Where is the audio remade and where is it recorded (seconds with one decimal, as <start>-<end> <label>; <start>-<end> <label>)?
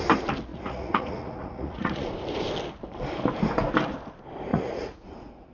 0.0-0.5 recorded; 0.5-2.1 remade; 2.1-4.5 recorded; 4.5-5.1 remade; 5.1-5.5 recorded